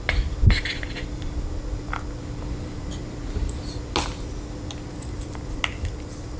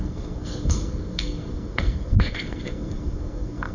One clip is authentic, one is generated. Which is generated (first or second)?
second